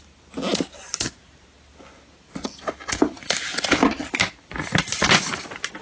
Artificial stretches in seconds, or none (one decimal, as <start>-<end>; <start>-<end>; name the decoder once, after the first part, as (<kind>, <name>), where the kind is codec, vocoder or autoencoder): none